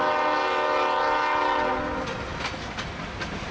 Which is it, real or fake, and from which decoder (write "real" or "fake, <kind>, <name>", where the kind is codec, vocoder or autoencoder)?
real